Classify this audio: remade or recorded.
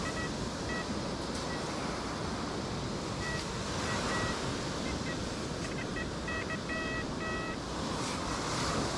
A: remade